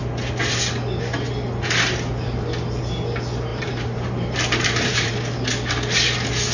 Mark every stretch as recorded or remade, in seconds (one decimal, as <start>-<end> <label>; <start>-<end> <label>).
0.0-3.5 recorded; 3.5-5.1 remade; 5.1-6.5 recorded